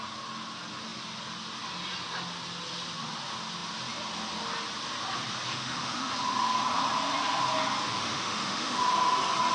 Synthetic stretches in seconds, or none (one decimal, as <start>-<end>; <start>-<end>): 5.5-6.1; 7.9-8.8